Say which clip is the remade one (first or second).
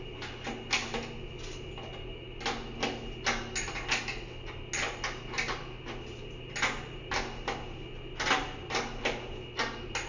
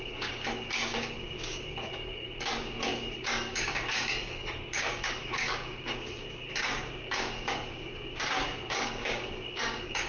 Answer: second